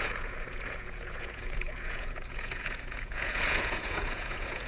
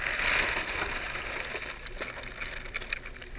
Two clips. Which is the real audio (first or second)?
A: second